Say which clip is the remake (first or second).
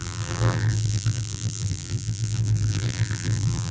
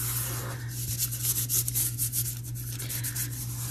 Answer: first